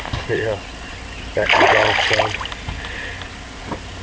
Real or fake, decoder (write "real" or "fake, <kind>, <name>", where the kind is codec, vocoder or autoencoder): real